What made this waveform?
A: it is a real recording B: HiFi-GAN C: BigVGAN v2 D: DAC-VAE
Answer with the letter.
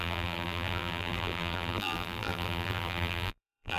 C